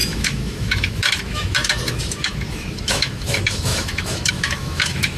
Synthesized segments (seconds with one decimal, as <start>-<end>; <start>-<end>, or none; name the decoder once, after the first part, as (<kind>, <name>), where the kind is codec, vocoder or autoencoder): 0.0-5.2 (autoencoder, DAC-VAE)